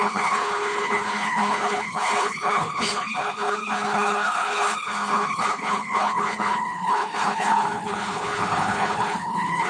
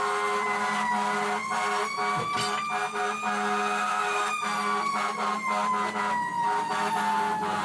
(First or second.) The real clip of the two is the second